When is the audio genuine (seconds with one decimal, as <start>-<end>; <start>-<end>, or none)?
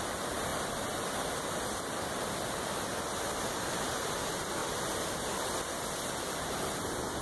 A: 0.5-3.5; 4.6-5.9